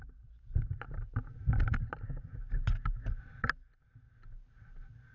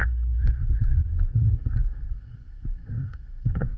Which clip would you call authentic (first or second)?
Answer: first